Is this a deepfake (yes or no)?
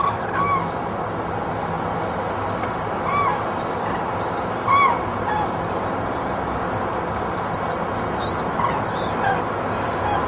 no